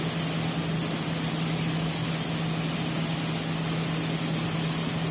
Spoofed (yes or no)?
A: no